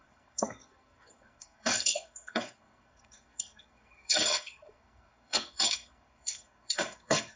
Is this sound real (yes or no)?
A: no